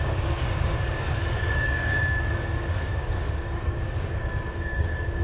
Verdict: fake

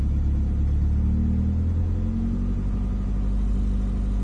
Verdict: real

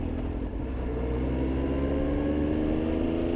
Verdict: real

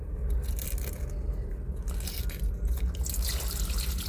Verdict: real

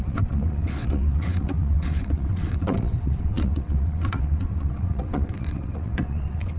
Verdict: fake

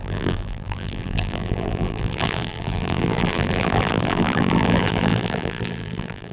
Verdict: fake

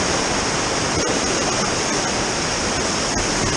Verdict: real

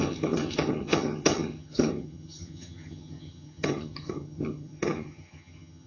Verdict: fake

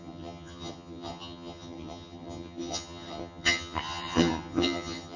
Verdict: fake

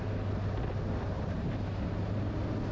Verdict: real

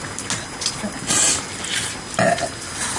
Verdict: real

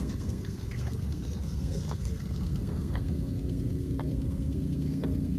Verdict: fake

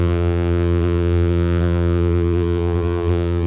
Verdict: fake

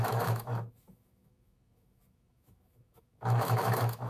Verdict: fake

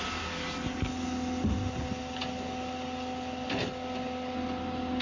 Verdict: real